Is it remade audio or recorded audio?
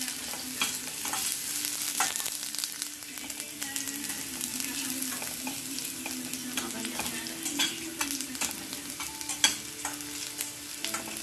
recorded